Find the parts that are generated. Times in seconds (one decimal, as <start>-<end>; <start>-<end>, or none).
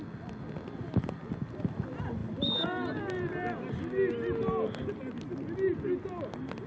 none